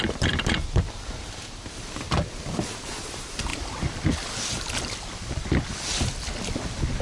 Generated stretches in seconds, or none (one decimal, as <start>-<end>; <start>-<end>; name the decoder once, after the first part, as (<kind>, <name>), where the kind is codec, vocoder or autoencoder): 3.5-5.5 (vocoder, BigVGAN v2)